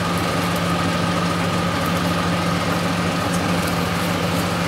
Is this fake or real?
real